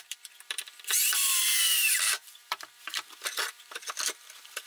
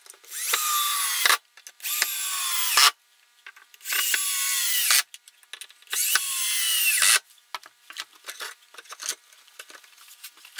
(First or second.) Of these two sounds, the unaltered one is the second